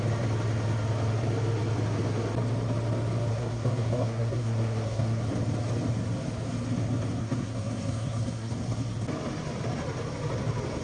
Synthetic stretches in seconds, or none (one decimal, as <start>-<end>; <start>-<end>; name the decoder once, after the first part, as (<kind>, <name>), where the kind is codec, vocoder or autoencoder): 3.3-5.2 (codec, SNAC); 7.2-8.5